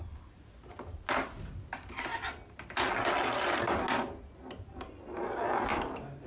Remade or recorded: recorded